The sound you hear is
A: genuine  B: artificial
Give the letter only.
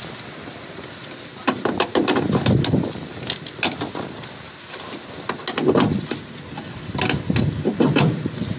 A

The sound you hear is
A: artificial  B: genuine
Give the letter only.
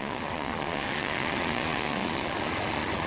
A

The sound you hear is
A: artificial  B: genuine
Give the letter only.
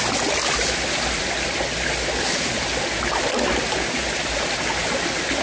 B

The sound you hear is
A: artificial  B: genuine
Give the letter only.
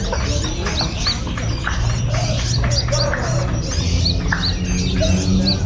B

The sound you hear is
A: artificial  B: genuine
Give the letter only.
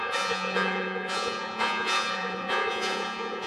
A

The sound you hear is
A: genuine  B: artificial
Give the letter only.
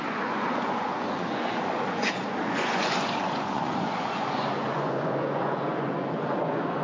B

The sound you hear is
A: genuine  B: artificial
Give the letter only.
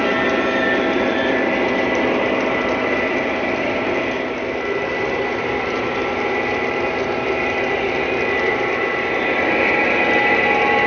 A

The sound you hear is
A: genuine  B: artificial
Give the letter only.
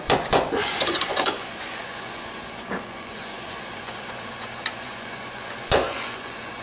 B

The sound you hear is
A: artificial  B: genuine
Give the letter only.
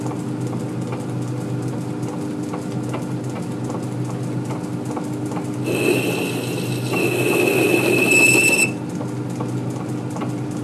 B